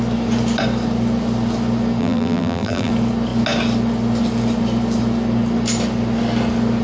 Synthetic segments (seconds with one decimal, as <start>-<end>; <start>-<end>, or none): 2.0-2.9